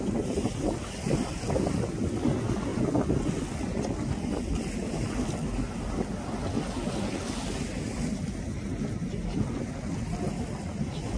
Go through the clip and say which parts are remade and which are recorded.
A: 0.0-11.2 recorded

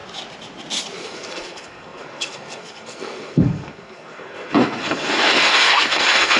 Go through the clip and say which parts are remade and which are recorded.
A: 0.0-1.0 recorded; 1.0-6.4 remade

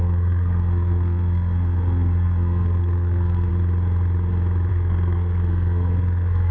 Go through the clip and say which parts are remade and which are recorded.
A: 0.0-3.5 remade; 3.5-4.7 recorded; 4.7-6.5 remade

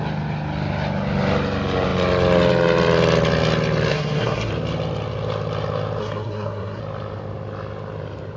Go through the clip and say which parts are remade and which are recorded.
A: 0.0-3.9 recorded; 3.9-4.5 remade; 4.5-6.0 recorded; 6.0-6.8 remade; 6.8-8.4 recorded

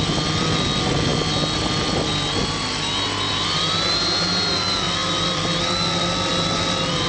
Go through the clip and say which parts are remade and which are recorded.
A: 0.0-7.1 recorded

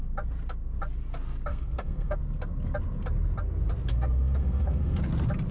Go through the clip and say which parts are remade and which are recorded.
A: 0.0-1.5 recorded; 1.5-2.2 remade; 2.2-3.9 recorded; 3.9-5.0 remade; 5.0-5.5 recorded

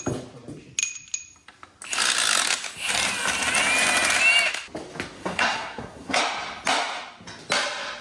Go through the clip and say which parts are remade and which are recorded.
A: 0.0-5.2 recorded; 5.2-6.2 remade; 6.2-8.0 recorded